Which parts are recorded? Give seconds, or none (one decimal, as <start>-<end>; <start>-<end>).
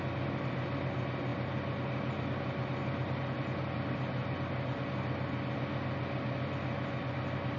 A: 0.0-7.6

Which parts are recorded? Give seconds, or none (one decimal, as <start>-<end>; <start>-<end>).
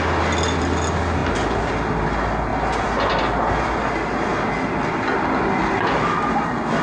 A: 0.0-6.8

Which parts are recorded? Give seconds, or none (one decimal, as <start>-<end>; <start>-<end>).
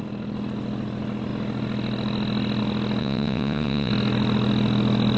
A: 0.0-3.0; 3.9-5.2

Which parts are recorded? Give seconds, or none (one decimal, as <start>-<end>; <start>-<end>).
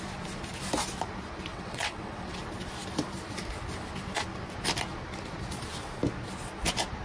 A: 0.0-1.5; 2.4-7.0